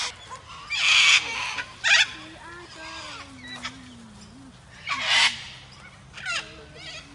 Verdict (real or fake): real